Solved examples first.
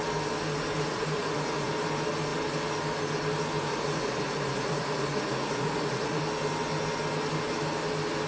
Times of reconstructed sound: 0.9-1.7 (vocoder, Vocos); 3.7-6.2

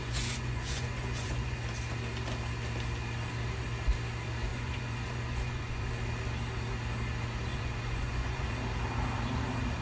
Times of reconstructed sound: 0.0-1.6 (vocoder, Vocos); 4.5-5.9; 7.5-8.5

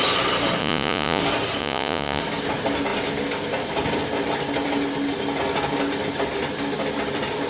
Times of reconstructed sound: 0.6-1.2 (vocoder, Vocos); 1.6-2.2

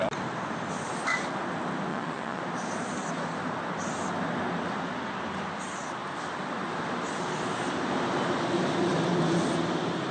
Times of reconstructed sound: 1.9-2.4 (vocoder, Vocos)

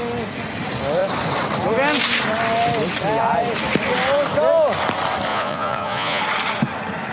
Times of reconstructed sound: 5.3-6.2 (vocoder, Vocos)